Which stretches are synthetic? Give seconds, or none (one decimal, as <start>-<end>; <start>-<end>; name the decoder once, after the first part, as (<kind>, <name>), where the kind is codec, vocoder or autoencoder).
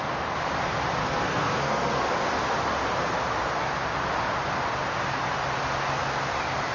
1.0-2.0 (codec, SNAC)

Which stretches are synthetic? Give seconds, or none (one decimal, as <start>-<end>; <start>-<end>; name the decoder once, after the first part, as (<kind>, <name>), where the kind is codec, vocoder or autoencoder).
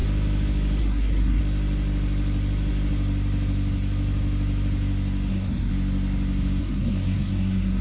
0.8-1.4 (codec, SNAC); 5.3-5.7; 6.6-7.8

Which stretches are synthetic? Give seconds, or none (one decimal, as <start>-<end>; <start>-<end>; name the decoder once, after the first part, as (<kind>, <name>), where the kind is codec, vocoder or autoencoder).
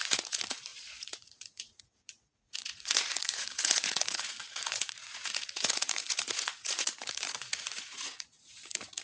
0.0-9.0 (vocoder, Vocos)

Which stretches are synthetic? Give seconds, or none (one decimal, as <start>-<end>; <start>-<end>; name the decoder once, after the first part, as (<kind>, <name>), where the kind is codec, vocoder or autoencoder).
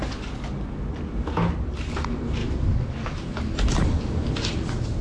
none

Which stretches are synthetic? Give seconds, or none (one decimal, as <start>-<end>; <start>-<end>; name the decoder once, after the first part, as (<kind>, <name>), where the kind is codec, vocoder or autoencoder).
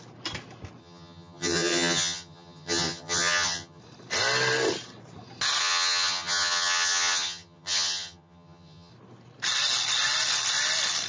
0.8-3.8 (vocoder, HiFi-GAN); 5.6-8.9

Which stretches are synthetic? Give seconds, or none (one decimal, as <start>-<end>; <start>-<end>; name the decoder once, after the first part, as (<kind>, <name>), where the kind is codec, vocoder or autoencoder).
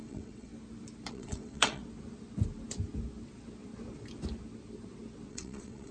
0.0-0.5 (vocoder, WaveNeXt); 1.1-1.8; 5.3-5.9